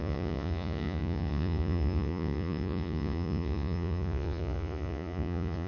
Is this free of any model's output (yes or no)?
no